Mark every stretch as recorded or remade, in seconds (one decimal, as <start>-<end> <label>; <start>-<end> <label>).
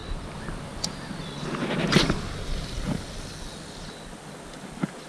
0.0-5.1 recorded